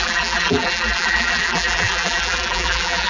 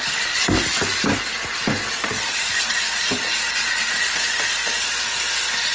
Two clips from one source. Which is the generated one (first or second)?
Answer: first